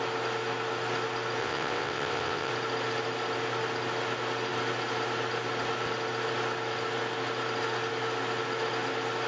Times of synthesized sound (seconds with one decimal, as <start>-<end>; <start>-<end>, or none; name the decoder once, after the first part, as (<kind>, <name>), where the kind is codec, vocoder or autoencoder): 1.4-2.5 (vocoder, WaveNeXt)